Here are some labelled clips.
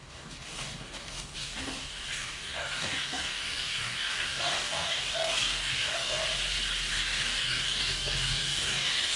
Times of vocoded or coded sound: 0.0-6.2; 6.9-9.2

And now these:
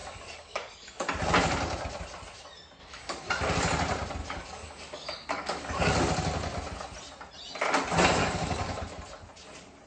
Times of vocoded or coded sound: 0.0-1.2; 2.8-3.3; 4.2-5.9; 8.2-8.7

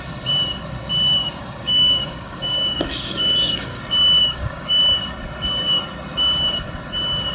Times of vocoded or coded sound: 1.2-3.8; 4.2-4.8